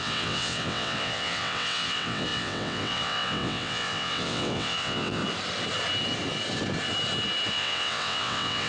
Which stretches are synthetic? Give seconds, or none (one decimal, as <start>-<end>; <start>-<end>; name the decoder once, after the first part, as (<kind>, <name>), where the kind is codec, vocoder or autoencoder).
0.0-5.2 (vocoder, WaveNeXt); 7.5-8.7